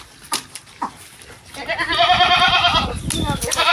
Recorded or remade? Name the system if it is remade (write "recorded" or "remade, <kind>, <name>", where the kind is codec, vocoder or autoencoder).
recorded